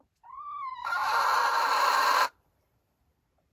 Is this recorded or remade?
remade